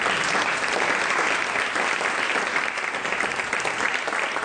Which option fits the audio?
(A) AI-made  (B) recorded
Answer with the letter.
B